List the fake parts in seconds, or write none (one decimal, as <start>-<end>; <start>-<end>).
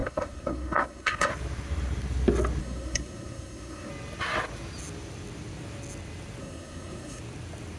0.0-1.3; 2.6-3.9; 6.4-7.2